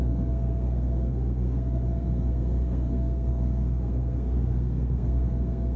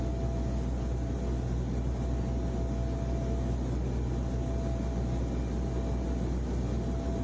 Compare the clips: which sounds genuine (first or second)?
second